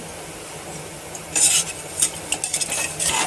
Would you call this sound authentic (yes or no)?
yes